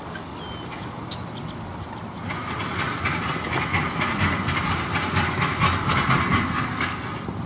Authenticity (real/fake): real